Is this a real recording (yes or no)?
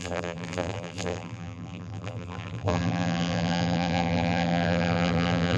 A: no